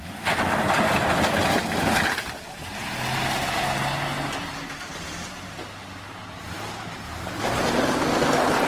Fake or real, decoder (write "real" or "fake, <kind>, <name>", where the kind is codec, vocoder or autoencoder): real